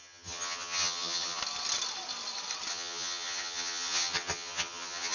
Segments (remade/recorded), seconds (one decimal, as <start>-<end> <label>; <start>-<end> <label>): 0.0-1.4 remade; 1.4-2.7 recorded; 2.7-5.1 remade